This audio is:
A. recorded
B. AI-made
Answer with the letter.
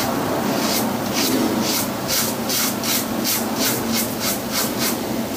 B